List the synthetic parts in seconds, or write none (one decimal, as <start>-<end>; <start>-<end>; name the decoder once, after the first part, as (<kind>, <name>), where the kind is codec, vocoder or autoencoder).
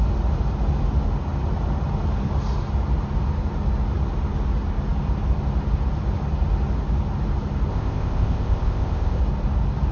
7.7-9.2 (codec, ZipCodec)